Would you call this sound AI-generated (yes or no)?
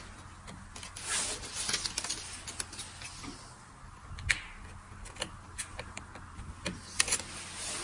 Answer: no